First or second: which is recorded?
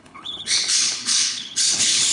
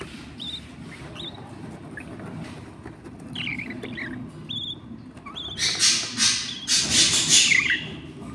second